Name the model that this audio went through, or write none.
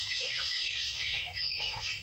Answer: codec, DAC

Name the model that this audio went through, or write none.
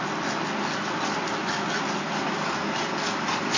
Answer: none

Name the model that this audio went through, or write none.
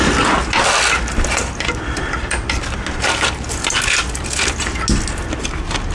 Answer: none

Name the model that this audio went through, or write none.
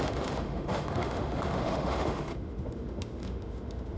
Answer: autoencoder, DAC-VAE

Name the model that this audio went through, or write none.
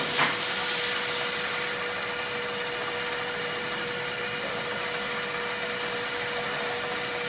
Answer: none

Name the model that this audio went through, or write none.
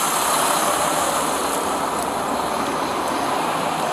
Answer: none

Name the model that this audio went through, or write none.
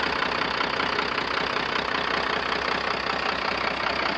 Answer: none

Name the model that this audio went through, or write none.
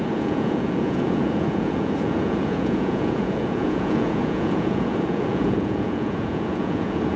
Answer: vocoder, Vocos